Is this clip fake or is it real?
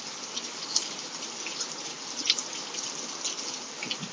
real